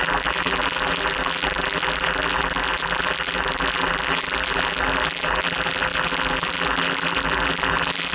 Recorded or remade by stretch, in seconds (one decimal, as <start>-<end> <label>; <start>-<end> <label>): 0.0-8.1 remade